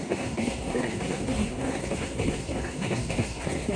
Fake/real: fake